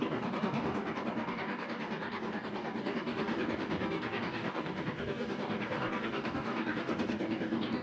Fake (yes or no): yes